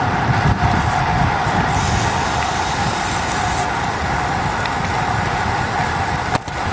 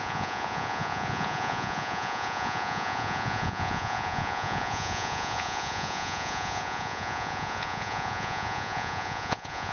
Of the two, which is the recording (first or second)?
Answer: first